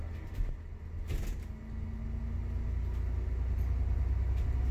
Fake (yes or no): no